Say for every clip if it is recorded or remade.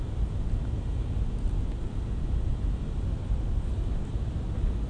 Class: recorded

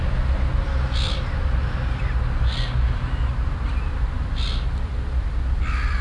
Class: recorded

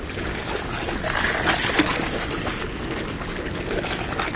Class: recorded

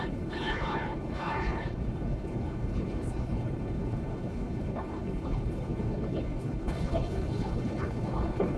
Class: remade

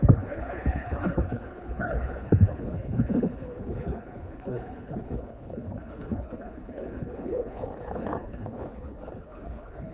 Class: remade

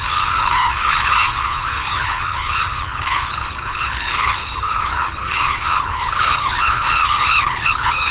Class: remade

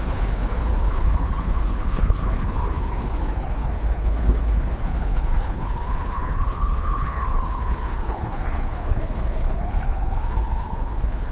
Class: remade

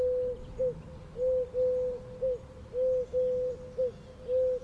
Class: recorded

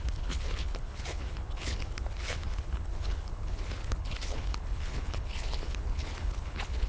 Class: remade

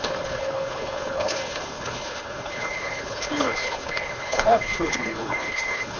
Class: remade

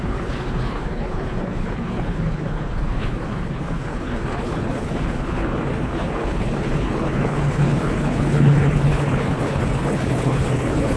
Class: remade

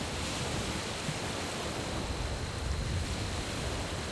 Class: recorded